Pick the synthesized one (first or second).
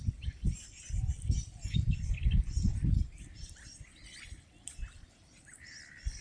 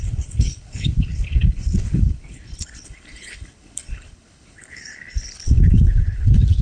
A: second